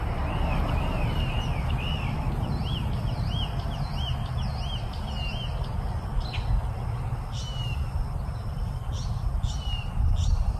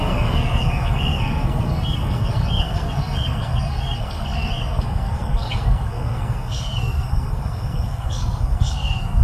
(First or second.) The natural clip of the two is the first